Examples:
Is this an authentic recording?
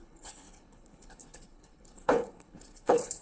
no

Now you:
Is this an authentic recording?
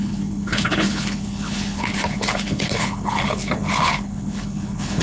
no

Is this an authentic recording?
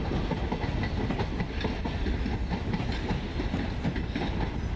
yes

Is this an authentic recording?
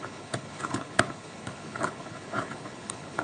no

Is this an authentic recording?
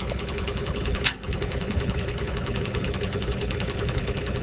no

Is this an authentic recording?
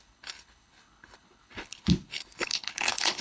no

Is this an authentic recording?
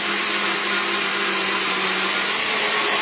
yes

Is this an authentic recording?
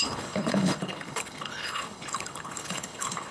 no